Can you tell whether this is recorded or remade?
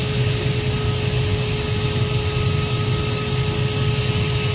recorded